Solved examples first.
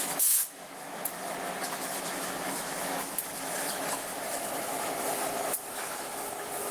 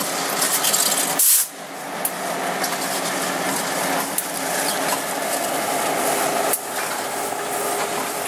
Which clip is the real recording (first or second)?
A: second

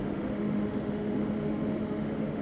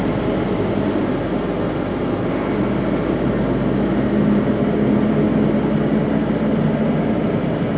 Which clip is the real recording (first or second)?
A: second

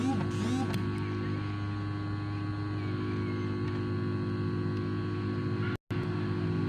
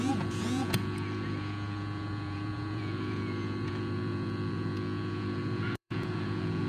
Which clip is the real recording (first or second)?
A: first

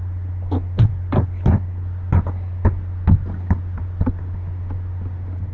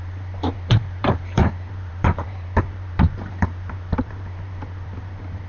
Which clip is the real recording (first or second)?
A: first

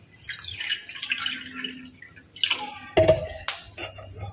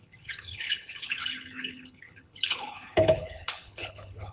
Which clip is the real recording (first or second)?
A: first